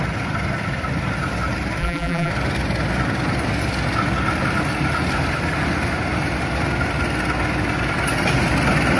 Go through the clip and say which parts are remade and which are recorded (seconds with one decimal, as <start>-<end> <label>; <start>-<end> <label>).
0.0-1.8 recorded; 1.8-2.3 remade; 2.3-9.0 recorded